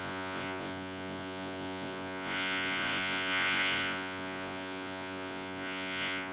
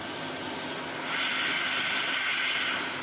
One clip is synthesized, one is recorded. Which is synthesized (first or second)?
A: first